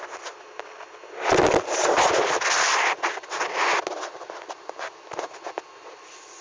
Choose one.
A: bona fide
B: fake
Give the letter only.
A